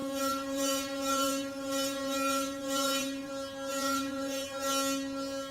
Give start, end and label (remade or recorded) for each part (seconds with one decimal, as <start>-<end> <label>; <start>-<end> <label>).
0.0-3.3 remade; 3.3-3.7 recorded; 3.7-4.7 remade; 4.7-5.5 recorded